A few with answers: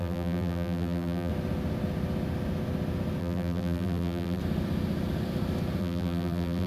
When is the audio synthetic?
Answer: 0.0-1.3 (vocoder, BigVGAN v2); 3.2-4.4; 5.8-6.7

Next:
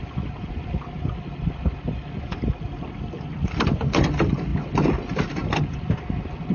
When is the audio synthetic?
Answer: none

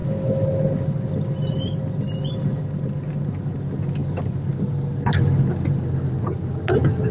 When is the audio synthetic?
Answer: none

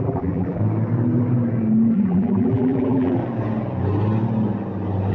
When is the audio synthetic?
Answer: 0.0-0.6 (vocoder, BigVGAN v2); 1.9-3.2